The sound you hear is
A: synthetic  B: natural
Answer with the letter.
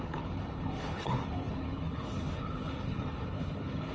A